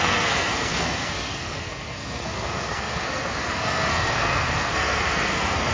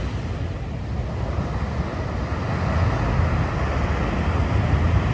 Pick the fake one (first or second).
first